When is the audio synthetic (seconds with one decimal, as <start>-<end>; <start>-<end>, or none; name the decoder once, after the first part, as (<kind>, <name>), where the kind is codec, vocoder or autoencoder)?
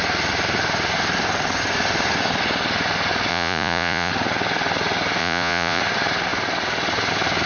3.3-4.1 (vocoder, Vocos); 5.2-5.8